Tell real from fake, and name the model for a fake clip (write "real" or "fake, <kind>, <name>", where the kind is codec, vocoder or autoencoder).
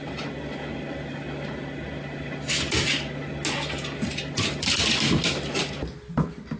real